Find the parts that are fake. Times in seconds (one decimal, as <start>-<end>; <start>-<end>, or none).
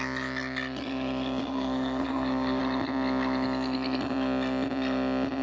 1.4-2.6